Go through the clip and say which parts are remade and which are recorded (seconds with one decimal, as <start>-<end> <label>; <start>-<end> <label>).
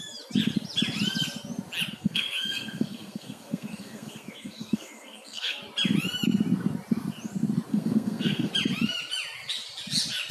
0.0-1.9 recorded; 1.9-5.6 remade; 5.6-7.7 recorded; 7.7-8.5 remade; 8.5-10.3 recorded